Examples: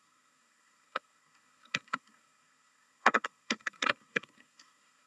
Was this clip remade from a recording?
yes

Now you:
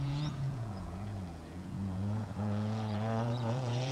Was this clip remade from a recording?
yes